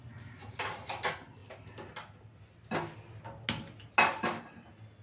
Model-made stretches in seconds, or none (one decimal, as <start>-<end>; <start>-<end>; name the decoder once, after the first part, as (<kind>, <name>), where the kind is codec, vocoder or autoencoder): none